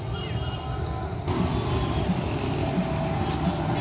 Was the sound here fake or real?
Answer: real